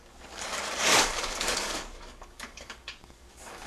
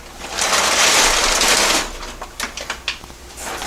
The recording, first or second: second